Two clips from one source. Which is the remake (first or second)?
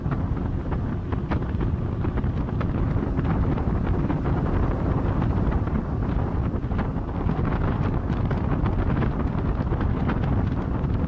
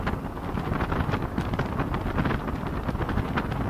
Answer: first